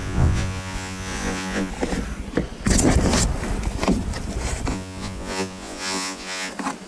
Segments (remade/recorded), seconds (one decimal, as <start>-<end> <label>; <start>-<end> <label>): 0.0-1.7 remade; 1.7-4.7 recorded; 4.7-6.5 remade; 6.5-6.9 recorded